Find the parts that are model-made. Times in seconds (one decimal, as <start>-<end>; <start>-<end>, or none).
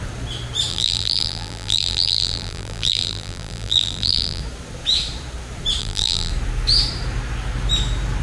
0.7-4.4; 5.8-6.3